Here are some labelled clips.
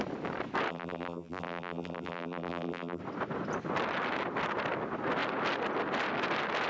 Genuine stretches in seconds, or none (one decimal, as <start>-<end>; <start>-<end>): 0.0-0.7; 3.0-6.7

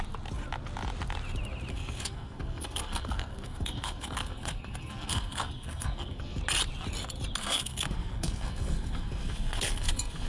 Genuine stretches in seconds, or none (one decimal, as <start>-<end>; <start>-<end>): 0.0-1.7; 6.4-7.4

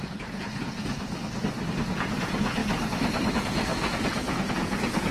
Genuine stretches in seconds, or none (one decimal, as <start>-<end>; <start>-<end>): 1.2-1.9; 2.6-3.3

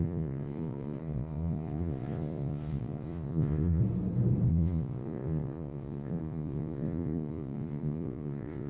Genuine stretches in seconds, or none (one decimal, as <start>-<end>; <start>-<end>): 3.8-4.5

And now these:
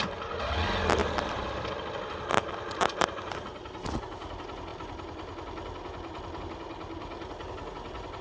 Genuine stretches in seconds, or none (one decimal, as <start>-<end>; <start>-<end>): 0.0-8.2

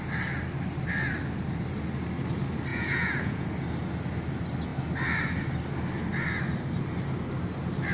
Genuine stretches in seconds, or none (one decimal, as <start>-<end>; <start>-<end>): 0.0-2.7; 3.5-7.9